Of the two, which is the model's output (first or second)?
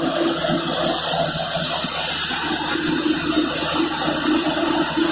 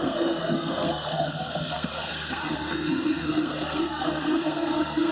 second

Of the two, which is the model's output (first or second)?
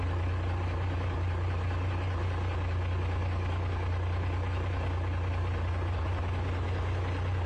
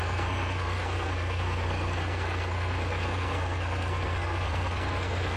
second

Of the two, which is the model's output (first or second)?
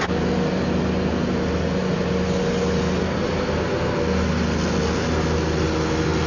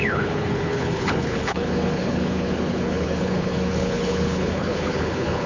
second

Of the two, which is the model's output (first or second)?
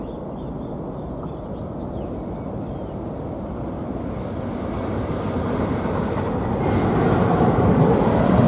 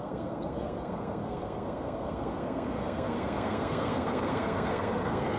second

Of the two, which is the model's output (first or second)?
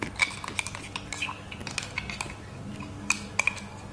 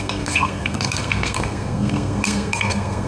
second